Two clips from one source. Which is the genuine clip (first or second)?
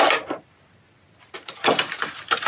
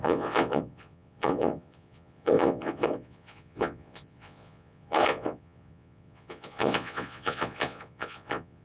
first